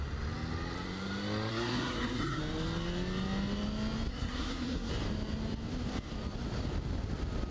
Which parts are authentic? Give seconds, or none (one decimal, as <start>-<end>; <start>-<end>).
0.0-1.5; 2.4-4.1; 4.9-7.5